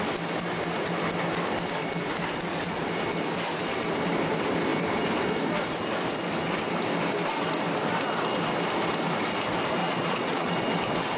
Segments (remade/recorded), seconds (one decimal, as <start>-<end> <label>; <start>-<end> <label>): 0.0-9.8 recorded; 9.8-10.5 remade; 10.5-11.2 recorded